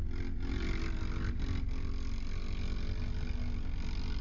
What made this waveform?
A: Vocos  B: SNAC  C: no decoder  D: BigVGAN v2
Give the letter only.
C